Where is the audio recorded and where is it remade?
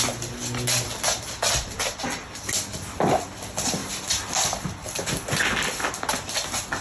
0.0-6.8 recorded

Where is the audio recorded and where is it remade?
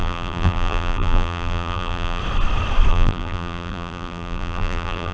0.0-2.2 remade; 2.2-2.9 recorded; 2.9-5.1 remade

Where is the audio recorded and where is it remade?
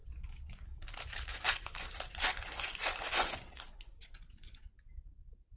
0.0-1.3 recorded; 1.3-4.6 remade; 4.6-5.6 recorded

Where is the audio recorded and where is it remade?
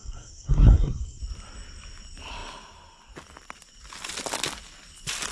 0.0-1.2 remade; 1.2-5.3 recorded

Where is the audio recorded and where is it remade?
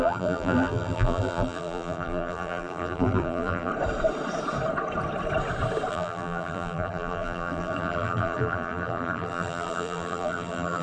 0.0-3.7 remade; 3.7-5.9 recorded; 5.9-10.8 remade